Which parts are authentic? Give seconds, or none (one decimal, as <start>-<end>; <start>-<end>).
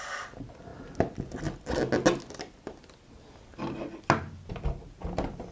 0.0-5.5